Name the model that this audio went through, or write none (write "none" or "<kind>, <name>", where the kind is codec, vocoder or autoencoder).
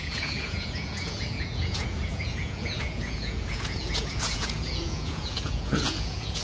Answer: vocoder, Vocos